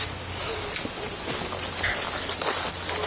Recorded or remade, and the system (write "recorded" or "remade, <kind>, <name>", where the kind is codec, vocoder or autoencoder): recorded